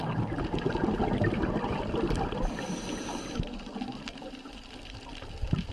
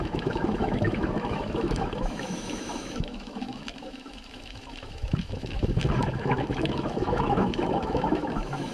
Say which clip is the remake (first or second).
second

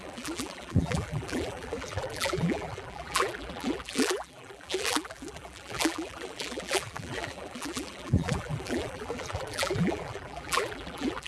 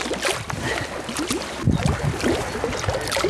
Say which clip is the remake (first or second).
first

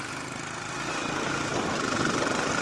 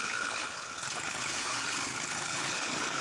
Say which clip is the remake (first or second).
second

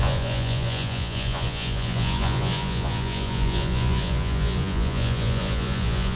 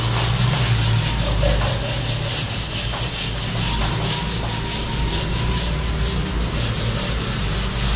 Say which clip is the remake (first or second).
first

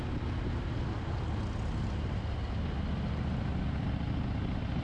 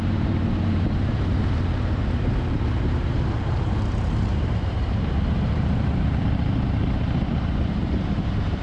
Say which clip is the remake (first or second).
second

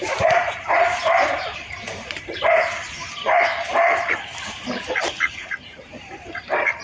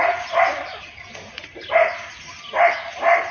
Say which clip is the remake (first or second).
first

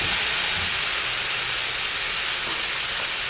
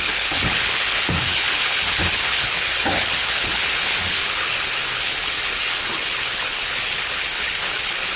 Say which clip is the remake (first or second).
second